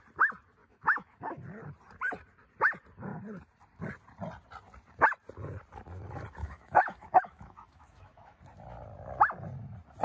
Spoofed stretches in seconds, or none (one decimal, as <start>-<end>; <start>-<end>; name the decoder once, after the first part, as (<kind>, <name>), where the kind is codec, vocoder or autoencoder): 0.6-1.4 (autoencoder, DAC-VAE); 6.4-8.4

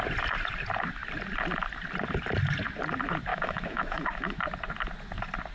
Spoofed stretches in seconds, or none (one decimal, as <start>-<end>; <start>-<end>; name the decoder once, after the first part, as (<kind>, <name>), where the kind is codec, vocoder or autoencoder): 3.3-4.4 (autoencoder, DAC-VAE)